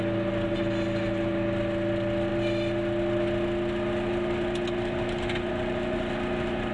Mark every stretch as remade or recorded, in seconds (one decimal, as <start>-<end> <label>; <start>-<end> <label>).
0.0-6.7 recorded